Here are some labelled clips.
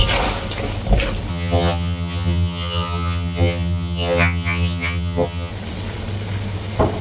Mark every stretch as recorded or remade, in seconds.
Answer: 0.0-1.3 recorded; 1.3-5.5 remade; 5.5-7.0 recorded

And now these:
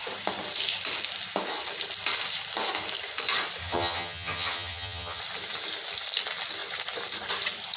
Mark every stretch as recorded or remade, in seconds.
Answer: 0.0-3.6 recorded; 3.6-5.2 remade; 5.2-7.8 recorded

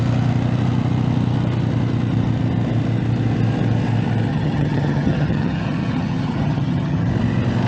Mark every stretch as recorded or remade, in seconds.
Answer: 0.0-4.3 recorded; 4.3-7.1 remade; 7.1-7.7 recorded